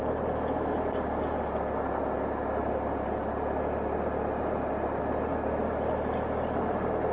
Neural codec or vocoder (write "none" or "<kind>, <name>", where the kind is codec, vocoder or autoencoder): none